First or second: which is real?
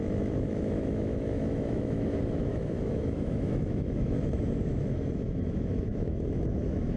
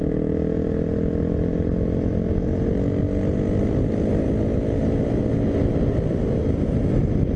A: second